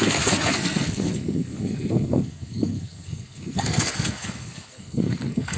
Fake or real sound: fake